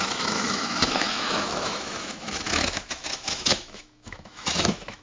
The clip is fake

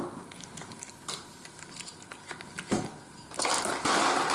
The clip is real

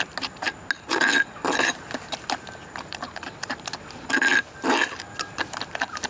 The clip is real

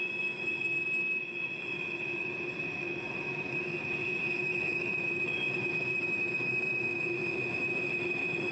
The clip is fake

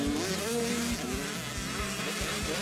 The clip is real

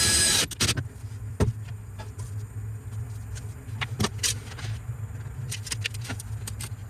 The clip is real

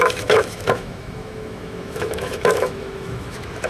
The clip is fake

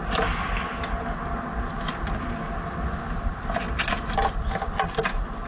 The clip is real